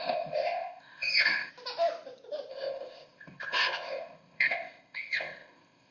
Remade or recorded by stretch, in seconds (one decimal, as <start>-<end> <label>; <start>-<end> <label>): 0.0-1.5 remade; 1.5-2.5 recorded; 2.5-5.9 remade